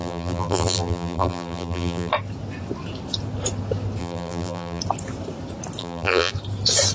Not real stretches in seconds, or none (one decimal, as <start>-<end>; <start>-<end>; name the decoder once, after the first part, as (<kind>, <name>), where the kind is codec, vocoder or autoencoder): 0.0-2.1 (vocoder, BigVGAN v2); 4.0-4.8; 5.8-6.3